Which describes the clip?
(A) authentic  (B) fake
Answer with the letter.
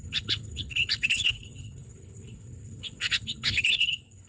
B